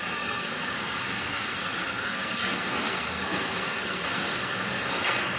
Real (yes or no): no